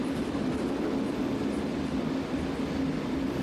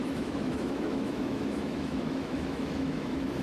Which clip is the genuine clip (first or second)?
first